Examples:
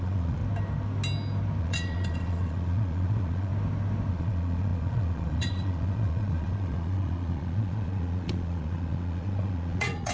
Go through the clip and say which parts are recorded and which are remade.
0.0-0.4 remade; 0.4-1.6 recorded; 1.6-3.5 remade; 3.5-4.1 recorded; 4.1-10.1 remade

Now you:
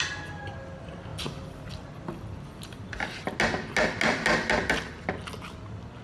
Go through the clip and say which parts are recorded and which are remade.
0.0-6.0 recorded

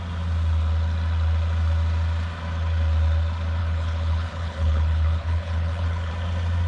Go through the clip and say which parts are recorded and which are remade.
0.0-3.6 recorded; 3.6-6.1 remade; 6.1-6.7 recorded

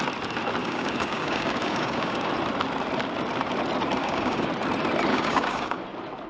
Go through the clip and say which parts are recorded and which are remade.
0.0-0.6 recorded; 0.6-2.3 remade; 2.3-4.0 recorded; 4.0-4.5 remade; 4.5-5.1 recorded; 5.1-5.8 remade; 5.8-6.3 recorded

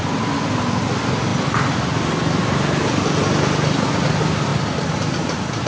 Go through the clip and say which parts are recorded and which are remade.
0.0-5.7 recorded

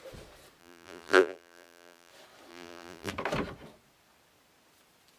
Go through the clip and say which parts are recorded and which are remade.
0.0-0.6 recorded; 0.6-2.1 remade; 2.1-2.5 recorded; 2.5-3.1 remade; 3.1-5.2 recorded

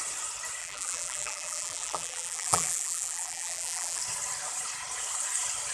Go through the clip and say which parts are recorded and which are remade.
0.0-0.6 recorded; 0.6-4.0 remade; 4.0-5.7 recorded